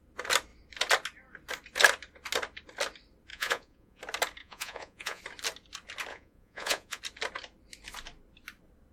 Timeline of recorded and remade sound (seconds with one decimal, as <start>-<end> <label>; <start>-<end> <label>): 0.0-3.3 recorded; 3.3-4.0 remade; 4.0-4.4 recorded; 4.4-5.2 remade; 5.2-6.1 recorded; 6.1-7.0 remade; 7.0-8.9 recorded